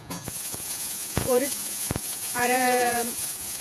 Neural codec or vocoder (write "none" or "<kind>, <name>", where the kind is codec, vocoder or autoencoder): vocoder, Vocos